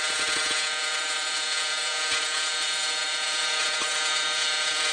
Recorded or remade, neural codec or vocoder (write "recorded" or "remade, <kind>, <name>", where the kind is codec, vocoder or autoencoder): remade, vocoder, WaveNeXt